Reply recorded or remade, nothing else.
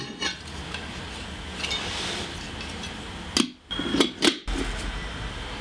recorded